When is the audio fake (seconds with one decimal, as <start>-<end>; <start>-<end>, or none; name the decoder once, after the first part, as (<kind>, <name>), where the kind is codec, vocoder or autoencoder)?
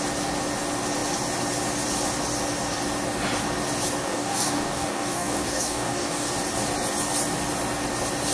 4.0-6.3 (codec, DAC)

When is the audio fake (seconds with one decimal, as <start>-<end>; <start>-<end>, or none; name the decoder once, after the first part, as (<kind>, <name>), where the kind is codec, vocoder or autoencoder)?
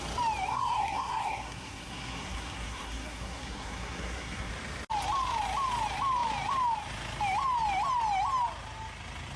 0.5-4.5 (codec, SNAC)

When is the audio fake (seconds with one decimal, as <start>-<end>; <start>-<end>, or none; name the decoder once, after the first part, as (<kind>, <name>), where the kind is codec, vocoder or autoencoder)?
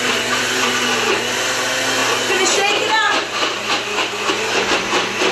none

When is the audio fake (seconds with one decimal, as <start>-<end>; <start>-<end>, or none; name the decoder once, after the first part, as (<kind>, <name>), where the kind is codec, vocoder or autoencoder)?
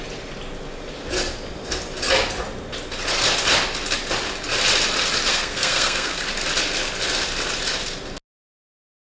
5.3-6.2 (codec, SNAC)